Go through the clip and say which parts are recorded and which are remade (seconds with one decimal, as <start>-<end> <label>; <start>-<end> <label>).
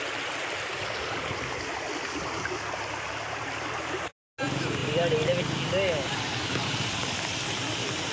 0.0-8.1 recorded